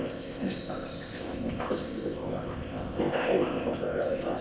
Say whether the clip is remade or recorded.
remade